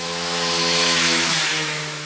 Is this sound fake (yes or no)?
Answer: yes